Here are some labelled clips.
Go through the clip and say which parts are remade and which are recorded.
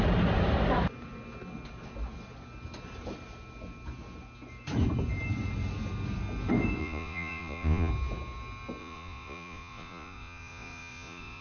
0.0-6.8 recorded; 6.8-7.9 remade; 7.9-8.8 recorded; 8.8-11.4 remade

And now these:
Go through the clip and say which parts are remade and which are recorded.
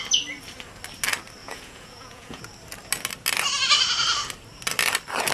0.0-1.4 recorded; 1.4-2.4 remade; 2.4-5.3 recorded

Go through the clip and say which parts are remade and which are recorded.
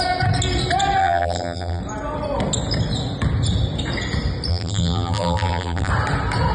0.0-1.0 recorded; 1.0-1.8 remade; 1.8-4.5 recorded; 4.5-5.9 remade; 5.9-6.5 recorded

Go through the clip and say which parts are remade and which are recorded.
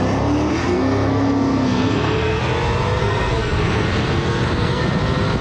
0.0-0.6 recorded; 0.6-2.4 remade; 2.4-3.0 recorded; 3.0-4.8 remade; 4.8-5.4 recorded